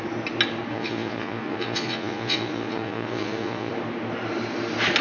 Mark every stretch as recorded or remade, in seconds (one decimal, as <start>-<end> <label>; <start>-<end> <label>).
0.0-0.7 recorded; 0.7-3.7 remade; 3.7-5.0 recorded